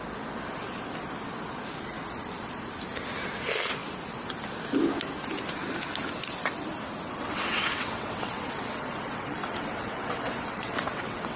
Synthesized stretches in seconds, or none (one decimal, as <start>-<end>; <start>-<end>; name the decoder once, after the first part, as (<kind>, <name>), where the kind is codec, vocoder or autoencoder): 7.2-11.4 (vocoder, WaveNeXt)